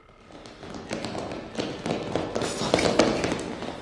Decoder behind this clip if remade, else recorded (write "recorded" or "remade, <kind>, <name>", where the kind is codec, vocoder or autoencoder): recorded